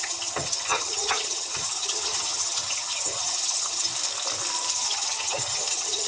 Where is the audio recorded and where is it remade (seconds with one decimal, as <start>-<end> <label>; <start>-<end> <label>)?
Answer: 0.0-3.9 remade; 3.9-4.7 recorded; 4.7-6.1 remade